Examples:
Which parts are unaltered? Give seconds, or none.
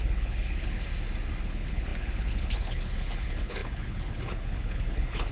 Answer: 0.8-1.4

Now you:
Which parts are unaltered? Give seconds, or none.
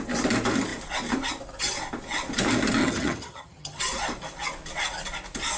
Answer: 0.0-2.8; 3.8-5.6